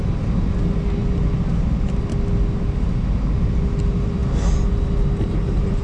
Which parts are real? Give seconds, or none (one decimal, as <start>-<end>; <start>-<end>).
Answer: 0.0-5.8